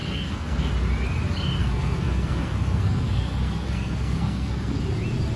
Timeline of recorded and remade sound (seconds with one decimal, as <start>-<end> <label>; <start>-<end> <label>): 0.0-0.7 remade; 0.7-1.6 recorded; 1.6-4.8 remade; 4.8-5.4 recorded